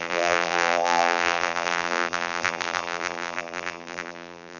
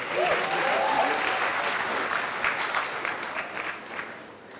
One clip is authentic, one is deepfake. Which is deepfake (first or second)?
first